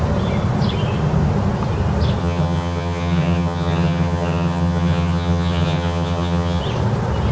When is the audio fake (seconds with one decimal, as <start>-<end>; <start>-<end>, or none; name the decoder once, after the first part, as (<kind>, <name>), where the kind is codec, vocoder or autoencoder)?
2.2-6.6 (vocoder, HiFi-GAN)